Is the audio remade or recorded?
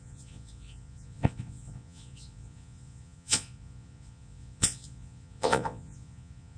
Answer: remade